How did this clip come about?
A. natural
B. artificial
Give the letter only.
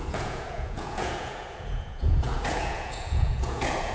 B